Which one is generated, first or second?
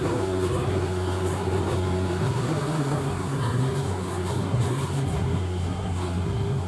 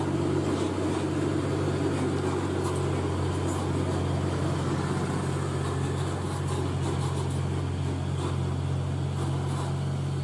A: first